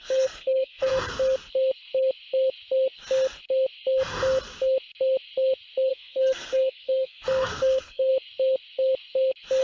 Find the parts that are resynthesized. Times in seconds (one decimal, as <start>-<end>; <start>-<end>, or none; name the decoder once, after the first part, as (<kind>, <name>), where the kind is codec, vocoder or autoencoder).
0.0-0.9 (codec, SNAC); 5.9-8.1